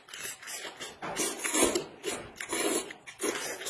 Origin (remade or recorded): recorded